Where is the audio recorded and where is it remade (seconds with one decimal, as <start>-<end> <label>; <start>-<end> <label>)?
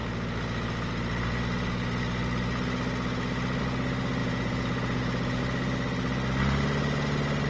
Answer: 0.0-4.2 recorded; 4.2-5.4 remade; 5.4-7.5 recorded